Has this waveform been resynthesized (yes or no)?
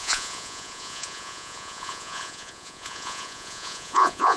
yes